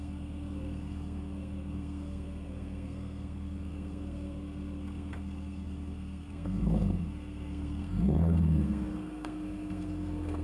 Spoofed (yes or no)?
yes